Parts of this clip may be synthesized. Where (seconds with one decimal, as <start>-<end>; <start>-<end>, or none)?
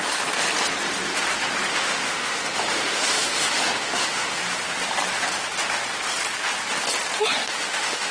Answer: 1.7-4.4; 7.4-8.1